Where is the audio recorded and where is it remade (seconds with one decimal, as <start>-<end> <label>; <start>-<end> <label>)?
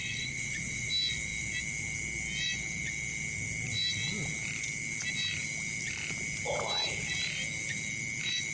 0.0-0.9 remade; 0.9-8.5 recorded